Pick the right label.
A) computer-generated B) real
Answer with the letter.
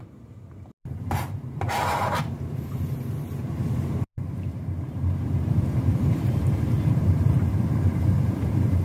A